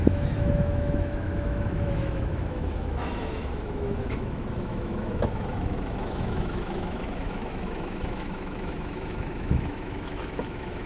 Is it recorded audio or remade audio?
remade